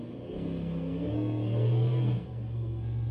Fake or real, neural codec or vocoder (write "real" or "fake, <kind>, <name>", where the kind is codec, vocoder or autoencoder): fake, codec, SNAC